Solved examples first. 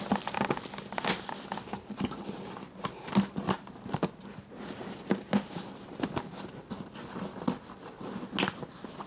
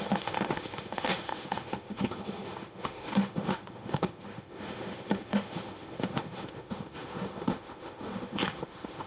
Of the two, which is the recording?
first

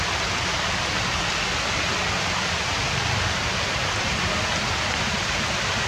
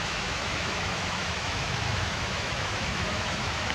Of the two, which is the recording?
first